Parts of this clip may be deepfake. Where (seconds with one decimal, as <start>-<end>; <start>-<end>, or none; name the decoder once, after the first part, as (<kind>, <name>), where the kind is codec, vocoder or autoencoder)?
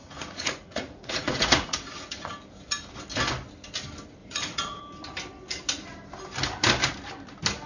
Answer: 0.0-2.3 (vocoder, Vocos); 4.2-4.8